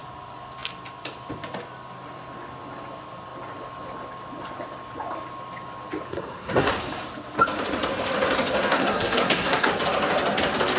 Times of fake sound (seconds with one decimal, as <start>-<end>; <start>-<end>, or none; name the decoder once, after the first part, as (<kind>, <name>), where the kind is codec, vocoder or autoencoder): 6.1-6.7 (codec, SNAC); 8.7-9.7